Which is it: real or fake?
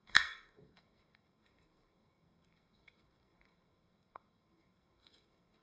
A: fake